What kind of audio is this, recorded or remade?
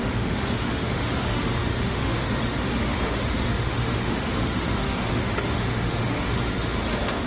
remade